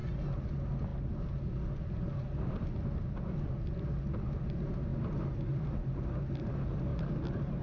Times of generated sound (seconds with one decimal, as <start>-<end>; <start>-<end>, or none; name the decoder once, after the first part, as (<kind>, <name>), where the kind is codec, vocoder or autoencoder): 4.9-6.5 (vocoder, BigVGAN v2); 6.9-7.6